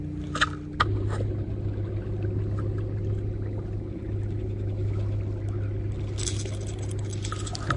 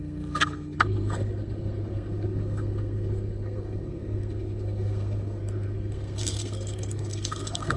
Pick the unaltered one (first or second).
first